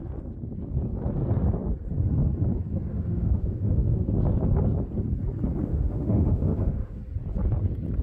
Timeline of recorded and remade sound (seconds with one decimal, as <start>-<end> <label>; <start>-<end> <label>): 0.0-2.9 recorded; 2.9-4.1 remade; 4.1-5.7 recorded; 5.7-7.0 remade; 7.0-8.0 recorded